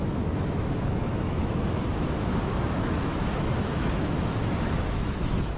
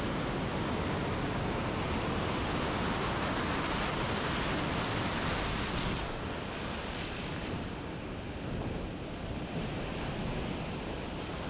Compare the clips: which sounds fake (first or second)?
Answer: first